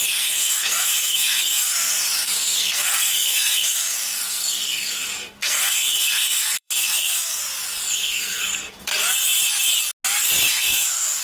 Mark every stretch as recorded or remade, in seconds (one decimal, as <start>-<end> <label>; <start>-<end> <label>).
0.0-7.4 remade; 7.4-7.9 recorded; 7.9-8.9 remade; 8.9-10.5 recorded; 10.5-11.2 remade